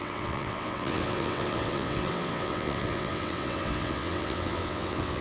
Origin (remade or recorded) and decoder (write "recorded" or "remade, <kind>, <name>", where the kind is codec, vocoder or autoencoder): remade, vocoder, WaveNeXt